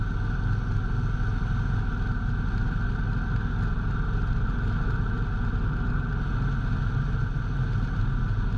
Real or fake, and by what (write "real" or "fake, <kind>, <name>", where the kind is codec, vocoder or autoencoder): real